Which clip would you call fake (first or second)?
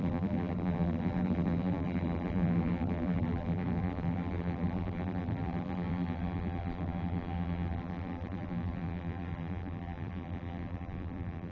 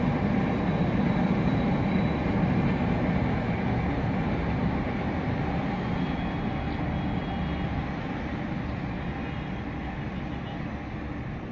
first